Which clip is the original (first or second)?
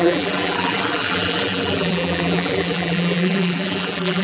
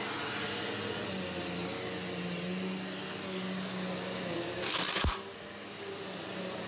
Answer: second